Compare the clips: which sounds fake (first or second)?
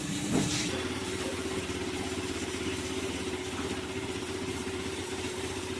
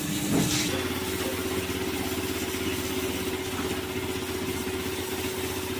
first